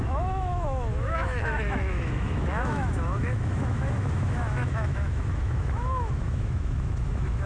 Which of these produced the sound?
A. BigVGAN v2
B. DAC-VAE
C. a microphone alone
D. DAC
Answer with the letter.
B